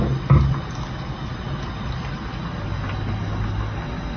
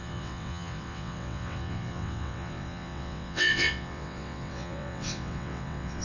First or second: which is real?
first